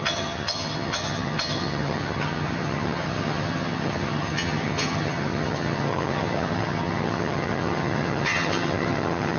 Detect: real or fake fake